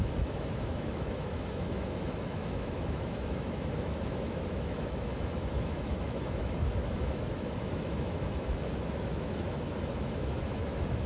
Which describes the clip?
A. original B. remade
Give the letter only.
B